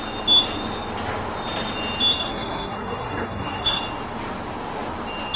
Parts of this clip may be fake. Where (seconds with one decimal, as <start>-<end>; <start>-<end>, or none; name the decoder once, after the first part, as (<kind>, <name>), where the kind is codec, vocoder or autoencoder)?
2.2-3.8 (codec, SNAC)

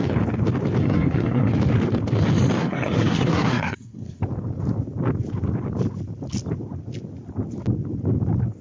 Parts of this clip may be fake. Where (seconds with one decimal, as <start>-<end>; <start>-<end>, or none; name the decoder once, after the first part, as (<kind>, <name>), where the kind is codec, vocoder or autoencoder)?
0.8-1.5 (codec, SNAC); 2.6-4.2

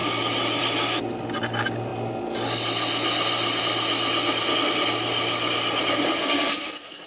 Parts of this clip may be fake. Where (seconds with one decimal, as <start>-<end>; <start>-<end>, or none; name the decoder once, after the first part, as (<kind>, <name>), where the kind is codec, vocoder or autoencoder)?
6.2-7.1 (codec, SNAC)

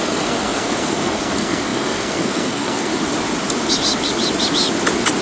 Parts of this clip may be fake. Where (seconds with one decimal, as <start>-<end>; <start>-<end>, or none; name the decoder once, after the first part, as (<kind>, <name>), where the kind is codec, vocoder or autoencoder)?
0.0-2.9 (codec, SNAC)

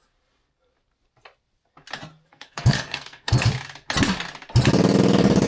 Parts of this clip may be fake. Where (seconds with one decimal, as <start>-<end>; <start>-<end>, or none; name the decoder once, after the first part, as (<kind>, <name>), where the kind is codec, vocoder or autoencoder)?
2.3-3.5 (codec, SNAC)

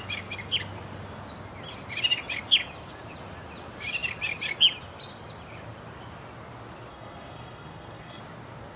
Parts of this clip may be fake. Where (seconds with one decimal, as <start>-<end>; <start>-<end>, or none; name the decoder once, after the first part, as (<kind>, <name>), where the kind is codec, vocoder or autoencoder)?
6.9-8.2 (codec, SNAC)